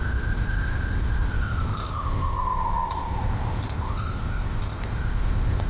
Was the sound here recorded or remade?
remade